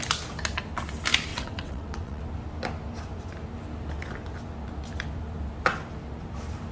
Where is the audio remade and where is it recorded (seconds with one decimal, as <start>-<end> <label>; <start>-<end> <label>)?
0.0-1.3 recorded; 1.3-2.2 remade; 2.2-6.7 recorded